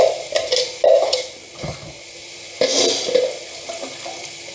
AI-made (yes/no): no